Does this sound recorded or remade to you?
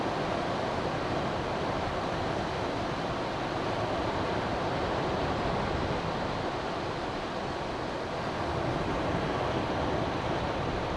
recorded